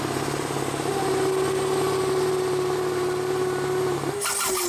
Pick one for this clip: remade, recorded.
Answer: recorded